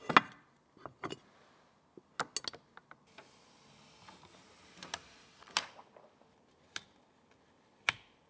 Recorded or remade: recorded